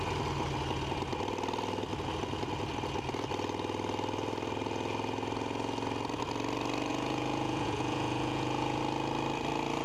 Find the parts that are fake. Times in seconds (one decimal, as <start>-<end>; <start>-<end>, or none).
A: 6.9-8.8